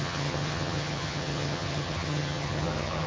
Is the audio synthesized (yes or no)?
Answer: yes